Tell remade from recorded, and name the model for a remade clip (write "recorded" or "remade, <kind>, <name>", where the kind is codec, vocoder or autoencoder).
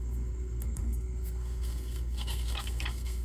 remade, codec, SNAC